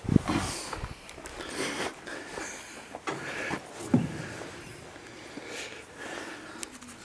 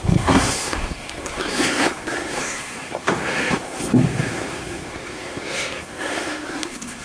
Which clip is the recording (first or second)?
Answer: first